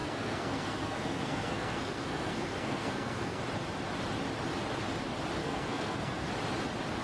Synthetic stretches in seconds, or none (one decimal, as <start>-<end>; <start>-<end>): 0.0-3.4; 5.4-6.3